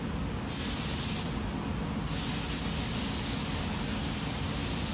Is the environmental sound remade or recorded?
recorded